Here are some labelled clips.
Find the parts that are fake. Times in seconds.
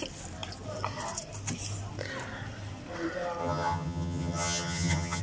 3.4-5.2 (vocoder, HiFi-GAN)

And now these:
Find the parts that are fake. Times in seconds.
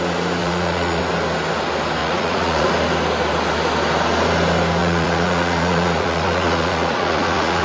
0.4-1.0 (vocoder, Vocos); 2.0-2.7; 4.8-7.6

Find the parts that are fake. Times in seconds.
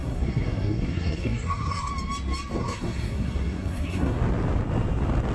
0.0-1.9 (codec, SNAC); 2.6-4.2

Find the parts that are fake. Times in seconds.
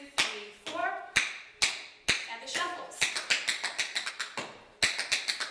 none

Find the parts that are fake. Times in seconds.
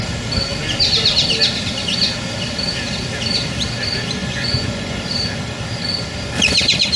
4.2-5.0 (vocoder, Vocos)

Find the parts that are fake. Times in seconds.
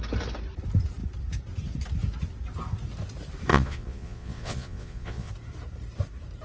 3.5-5.3 (vocoder, Vocos)